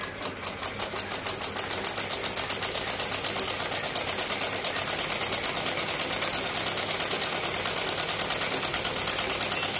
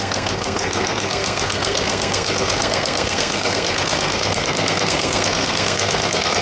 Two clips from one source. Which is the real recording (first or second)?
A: first